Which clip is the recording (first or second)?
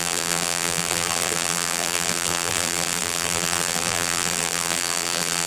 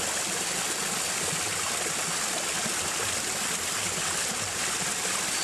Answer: second